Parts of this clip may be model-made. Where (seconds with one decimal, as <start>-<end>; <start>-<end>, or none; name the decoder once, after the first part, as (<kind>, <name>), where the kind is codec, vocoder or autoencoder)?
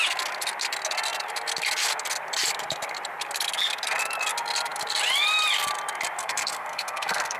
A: 6.2-7.4 (codec, SNAC)